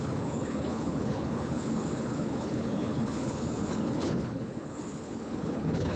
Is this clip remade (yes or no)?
yes